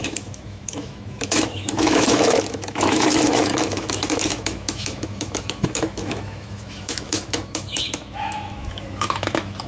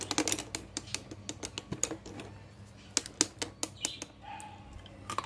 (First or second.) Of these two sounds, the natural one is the second